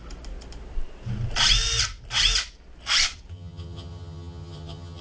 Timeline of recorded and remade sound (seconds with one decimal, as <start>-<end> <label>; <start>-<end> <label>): 0.0-3.3 recorded; 3.3-5.0 remade